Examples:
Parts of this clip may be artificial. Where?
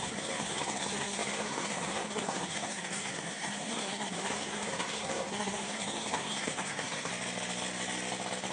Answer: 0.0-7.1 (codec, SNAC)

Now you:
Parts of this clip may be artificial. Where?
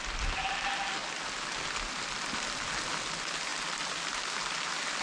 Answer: none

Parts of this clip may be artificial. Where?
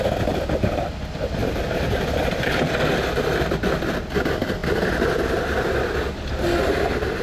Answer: 1.4-2.7 (vocoder, BigVGAN v2)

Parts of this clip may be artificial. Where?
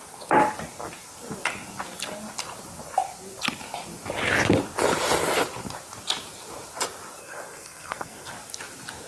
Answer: 7.2-8.3 (codec, SNAC)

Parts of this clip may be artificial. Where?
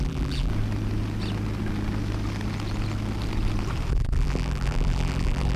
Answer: 0.0-0.5 (vocoder, BigVGAN v2); 3.9-5.6